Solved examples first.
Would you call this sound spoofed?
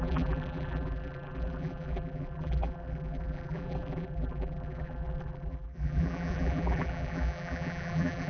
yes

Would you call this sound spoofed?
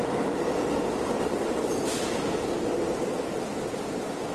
yes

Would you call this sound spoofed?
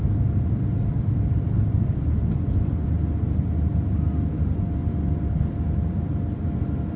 no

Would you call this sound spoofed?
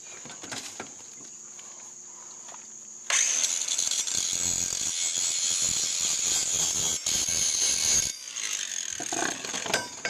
no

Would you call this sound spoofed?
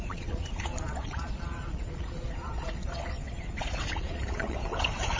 yes